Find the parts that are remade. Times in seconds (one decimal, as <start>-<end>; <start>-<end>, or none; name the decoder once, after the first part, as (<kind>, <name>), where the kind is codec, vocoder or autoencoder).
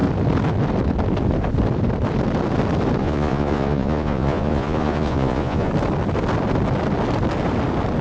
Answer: 3.0-5.7 (vocoder, Vocos)